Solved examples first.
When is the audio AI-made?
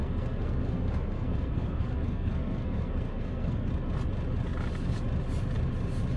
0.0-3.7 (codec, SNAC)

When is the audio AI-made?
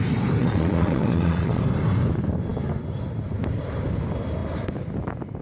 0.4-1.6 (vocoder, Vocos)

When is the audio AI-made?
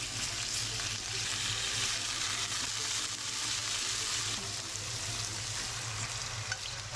none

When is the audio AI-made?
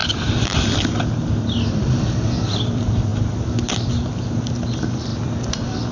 1.9-3.1 (vocoder, BigVGAN v2); 4.1-5.1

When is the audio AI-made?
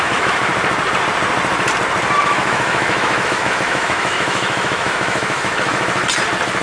0.0-0.5 (autoencoder, DAC-VAE); 2.2-6.0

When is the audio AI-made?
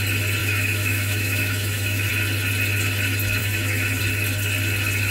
0.4-2.1 (autoencoder, DAC-VAE); 3.4-4.0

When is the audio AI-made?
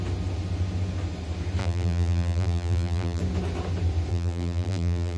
1.6-3.2 (vocoder, BigVGAN v2); 4.1-5.2